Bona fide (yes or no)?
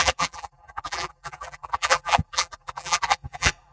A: no